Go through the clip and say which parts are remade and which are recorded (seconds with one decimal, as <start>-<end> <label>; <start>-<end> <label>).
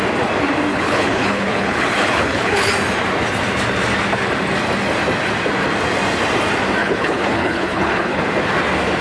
0.0-0.7 recorded; 0.7-2.7 remade; 2.7-6.8 recorded; 6.8-8.2 remade; 8.2-9.0 recorded